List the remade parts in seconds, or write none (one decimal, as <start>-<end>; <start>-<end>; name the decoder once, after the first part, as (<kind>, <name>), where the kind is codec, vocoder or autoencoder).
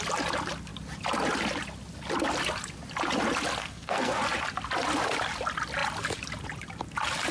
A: 3.6-4.2 (codec, SNAC)